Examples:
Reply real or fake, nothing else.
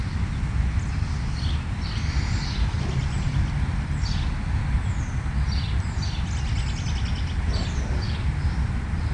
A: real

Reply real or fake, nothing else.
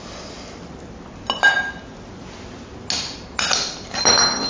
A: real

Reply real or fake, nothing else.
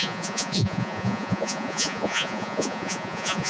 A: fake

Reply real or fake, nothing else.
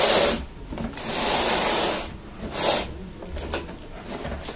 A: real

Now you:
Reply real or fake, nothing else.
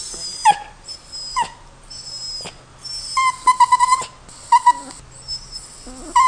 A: real